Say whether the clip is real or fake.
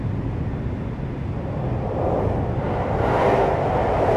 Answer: real